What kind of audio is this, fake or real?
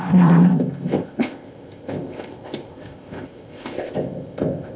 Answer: fake